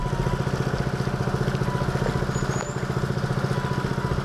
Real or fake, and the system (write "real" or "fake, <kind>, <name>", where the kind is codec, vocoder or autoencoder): real